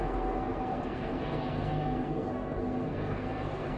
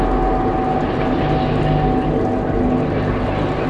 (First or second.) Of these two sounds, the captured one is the second